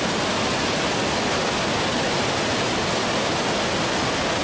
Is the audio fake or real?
real